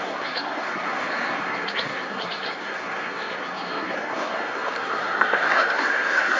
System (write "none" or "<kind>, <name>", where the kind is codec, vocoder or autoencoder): codec, SNAC